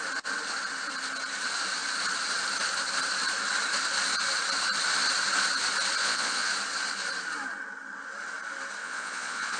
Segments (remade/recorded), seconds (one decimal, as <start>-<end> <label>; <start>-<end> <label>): 0.0-6.0 recorded; 6.0-6.5 remade; 6.5-8.8 recorded; 8.8-9.6 remade